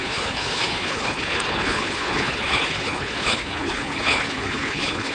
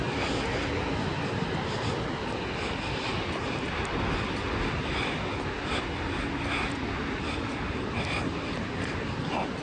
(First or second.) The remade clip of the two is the first